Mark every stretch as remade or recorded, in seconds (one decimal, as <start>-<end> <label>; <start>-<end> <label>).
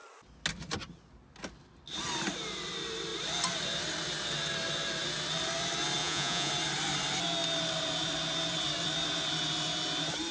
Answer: 0.0-6.0 recorded; 6.0-6.5 remade; 6.5-10.3 recorded